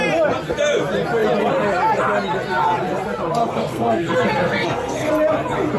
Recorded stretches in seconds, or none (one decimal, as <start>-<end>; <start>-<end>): 0.0-3.4; 5.1-5.8